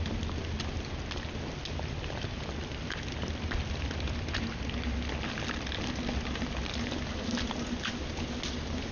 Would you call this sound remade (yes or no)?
no